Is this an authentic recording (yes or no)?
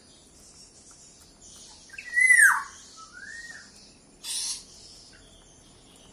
yes